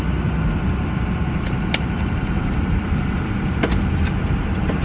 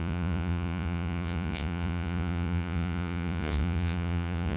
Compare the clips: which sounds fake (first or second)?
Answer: second